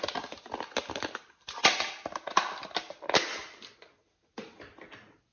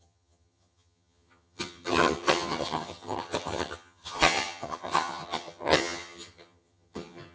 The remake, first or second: second